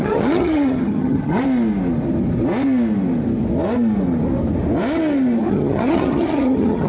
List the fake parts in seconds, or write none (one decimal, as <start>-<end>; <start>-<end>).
0.0-1.4; 5.5-6.9